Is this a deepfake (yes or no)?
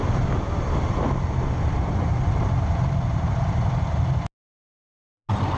no